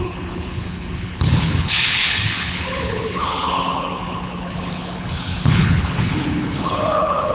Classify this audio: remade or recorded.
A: remade